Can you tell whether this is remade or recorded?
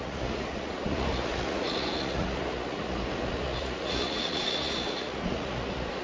remade